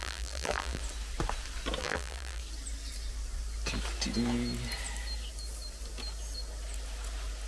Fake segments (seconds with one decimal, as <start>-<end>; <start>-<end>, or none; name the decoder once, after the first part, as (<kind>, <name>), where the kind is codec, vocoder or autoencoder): 0.0-0.8 (vocoder, BigVGAN v2); 1.8-2.4